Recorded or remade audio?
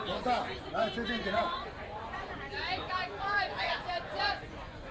remade